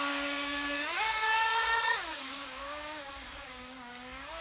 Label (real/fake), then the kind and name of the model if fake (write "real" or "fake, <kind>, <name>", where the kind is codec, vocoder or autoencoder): fake, codec, DAC